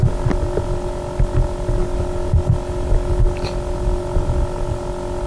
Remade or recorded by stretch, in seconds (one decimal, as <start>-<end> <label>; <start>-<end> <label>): 0.0-5.3 recorded